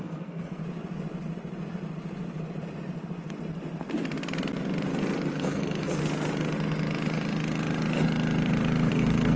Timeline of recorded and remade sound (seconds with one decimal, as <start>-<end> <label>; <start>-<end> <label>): 0.0-0.6 remade; 0.6-5.3 recorded; 5.3-6.0 remade; 6.0-8.9 recorded; 8.9-9.4 remade